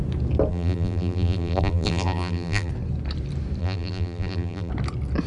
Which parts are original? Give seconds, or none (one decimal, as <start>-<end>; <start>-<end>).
0.0-0.5; 2.7-3.6; 4.7-5.3